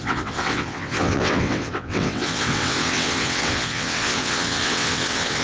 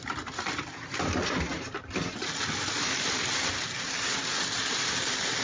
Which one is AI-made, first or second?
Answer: first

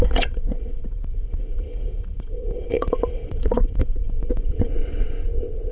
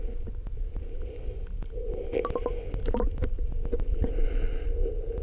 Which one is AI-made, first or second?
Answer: first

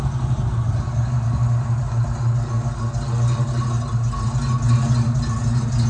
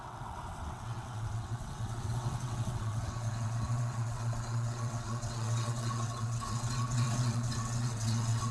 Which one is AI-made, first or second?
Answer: second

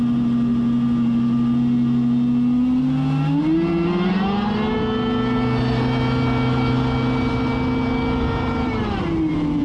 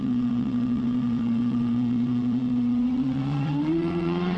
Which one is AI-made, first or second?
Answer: second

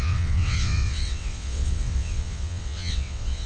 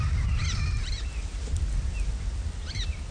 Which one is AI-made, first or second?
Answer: first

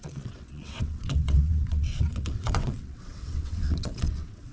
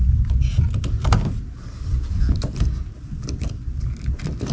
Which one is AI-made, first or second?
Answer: first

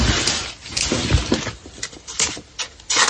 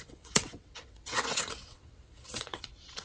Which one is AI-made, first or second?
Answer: second